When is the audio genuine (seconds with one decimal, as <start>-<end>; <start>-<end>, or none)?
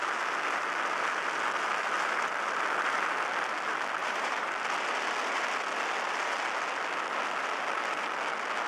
0.0-4.0; 4.5-8.7